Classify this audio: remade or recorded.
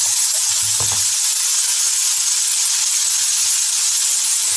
recorded